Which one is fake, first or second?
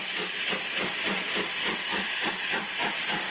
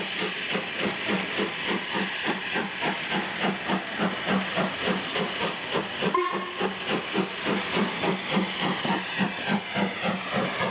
first